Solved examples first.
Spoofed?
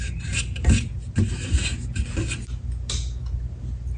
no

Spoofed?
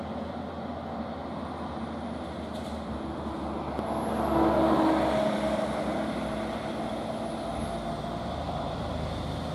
no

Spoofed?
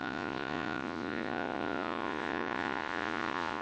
yes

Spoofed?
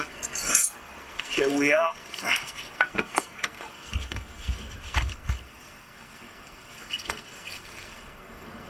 yes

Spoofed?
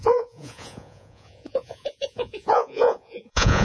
yes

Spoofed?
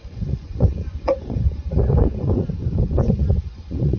yes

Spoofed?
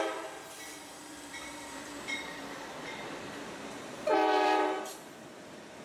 yes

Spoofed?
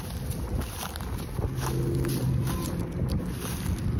no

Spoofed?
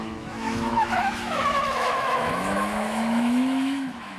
yes